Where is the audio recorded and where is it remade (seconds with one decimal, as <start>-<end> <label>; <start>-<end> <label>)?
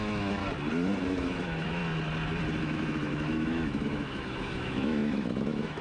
0.0-0.4 remade; 0.4-1.0 recorded; 1.0-1.8 remade; 1.8-2.6 recorded; 2.6-5.8 remade